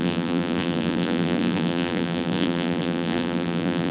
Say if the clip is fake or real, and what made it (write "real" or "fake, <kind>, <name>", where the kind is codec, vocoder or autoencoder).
fake, vocoder, BigVGAN v2